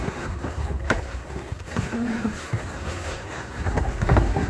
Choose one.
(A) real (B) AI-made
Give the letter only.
B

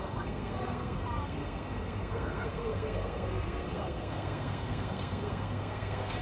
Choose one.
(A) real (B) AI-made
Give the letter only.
B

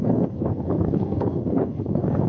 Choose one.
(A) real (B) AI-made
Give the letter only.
B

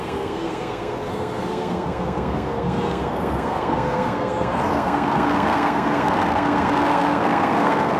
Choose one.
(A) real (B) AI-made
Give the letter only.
B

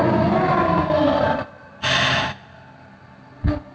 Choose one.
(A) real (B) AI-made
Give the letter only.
A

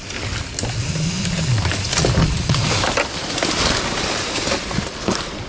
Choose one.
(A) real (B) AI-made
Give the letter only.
A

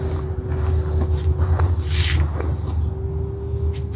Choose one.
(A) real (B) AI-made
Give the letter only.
A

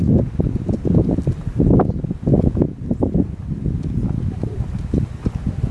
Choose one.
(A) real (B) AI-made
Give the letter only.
A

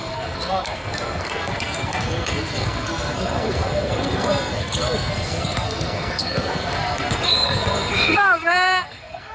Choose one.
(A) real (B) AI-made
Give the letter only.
B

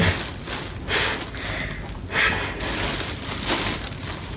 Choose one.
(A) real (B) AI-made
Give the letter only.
A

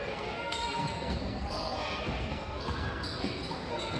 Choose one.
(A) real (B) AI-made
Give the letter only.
B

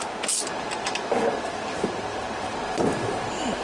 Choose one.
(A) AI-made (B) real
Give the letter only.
B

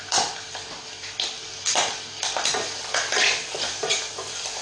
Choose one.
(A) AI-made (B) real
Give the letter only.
B